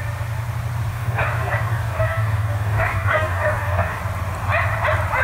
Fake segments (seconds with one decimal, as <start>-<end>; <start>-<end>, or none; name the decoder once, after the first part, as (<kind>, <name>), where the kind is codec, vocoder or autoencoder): 0.9-4.0 (codec, DAC)